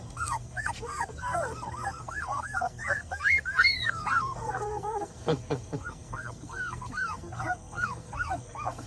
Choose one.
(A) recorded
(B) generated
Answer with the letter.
B